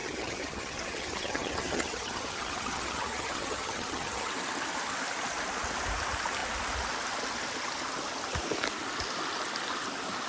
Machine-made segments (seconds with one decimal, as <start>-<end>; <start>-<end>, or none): 0.0-4.3